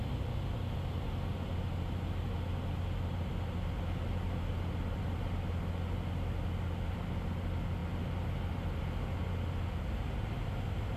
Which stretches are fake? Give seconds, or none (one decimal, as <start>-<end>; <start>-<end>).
none